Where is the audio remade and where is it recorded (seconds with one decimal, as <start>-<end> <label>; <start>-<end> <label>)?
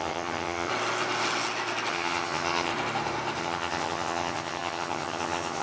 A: 0.0-0.7 remade; 0.7-1.9 recorded; 1.9-2.7 remade; 2.7-3.4 recorded; 3.4-5.6 remade